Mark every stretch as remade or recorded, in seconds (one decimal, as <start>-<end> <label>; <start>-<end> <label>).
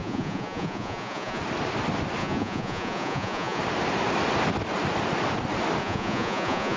0.0-1.4 remade; 1.4-2.2 recorded; 2.2-3.6 remade; 3.6-5.8 recorded; 5.8-6.8 remade